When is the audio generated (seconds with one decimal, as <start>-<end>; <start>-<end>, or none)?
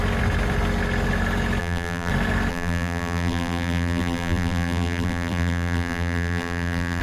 1.6-2.1; 2.5-7.0